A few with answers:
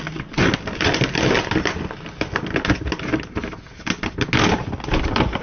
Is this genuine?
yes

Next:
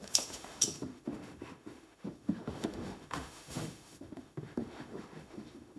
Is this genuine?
no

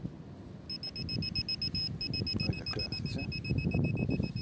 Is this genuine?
yes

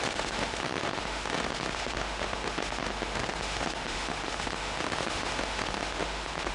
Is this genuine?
no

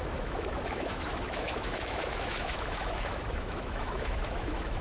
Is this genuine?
no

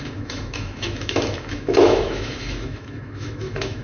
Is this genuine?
no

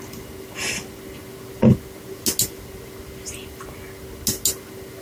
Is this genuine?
yes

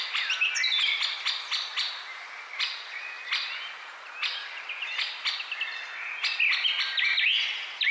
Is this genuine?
yes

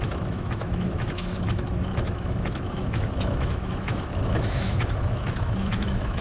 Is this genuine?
no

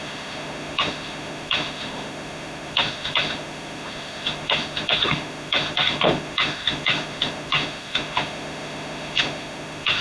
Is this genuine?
no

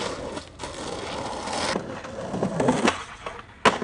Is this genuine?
yes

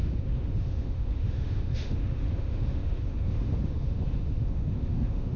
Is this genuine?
no